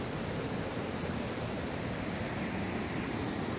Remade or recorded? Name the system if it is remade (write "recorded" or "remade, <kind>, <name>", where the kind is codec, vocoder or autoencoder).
recorded